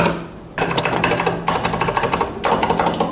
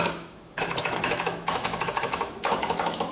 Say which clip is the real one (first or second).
first